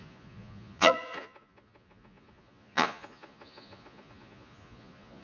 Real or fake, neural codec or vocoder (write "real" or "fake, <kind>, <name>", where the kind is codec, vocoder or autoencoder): fake, vocoder, Vocos